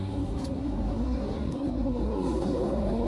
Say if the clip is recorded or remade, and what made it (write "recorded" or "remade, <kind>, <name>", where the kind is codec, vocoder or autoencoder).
remade, codec, SNAC